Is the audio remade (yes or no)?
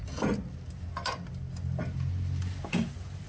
no